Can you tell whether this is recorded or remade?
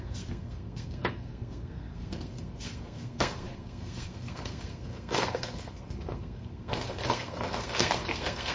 remade